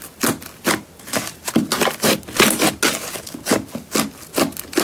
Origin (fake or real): real